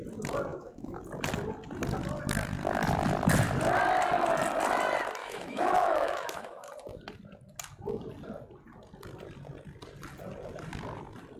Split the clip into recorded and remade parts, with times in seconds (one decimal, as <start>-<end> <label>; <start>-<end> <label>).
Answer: 0.0-0.5 recorded; 0.5-1.0 remade; 1.0-5.2 recorded; 5.2-6.7 remade; 6.7-11.4 recorded